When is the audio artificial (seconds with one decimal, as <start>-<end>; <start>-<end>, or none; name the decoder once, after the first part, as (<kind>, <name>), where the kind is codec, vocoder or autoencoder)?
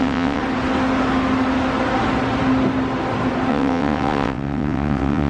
0.0-0.4 (vocoder, WaveNeXt); 3.5-5.3